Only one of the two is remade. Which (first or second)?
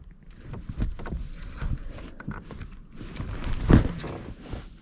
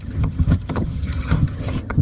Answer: second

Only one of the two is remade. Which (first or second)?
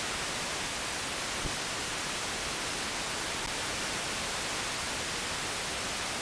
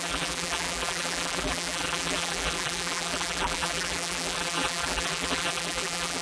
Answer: second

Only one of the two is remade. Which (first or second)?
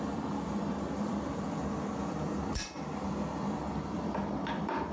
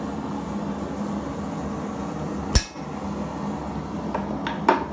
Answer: first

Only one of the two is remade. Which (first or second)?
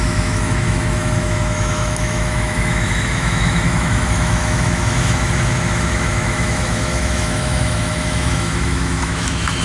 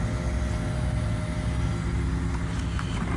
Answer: first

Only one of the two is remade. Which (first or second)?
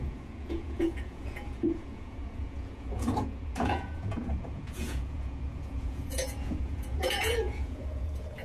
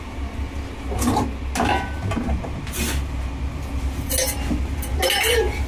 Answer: first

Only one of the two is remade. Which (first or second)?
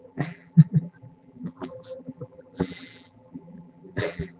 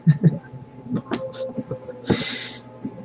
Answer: first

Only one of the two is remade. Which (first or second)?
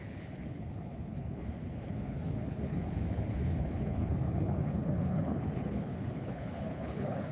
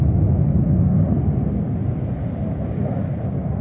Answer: first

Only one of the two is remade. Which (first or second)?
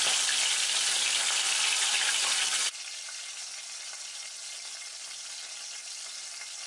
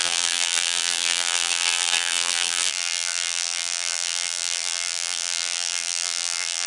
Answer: second